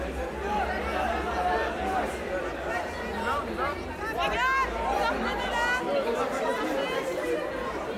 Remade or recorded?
recorded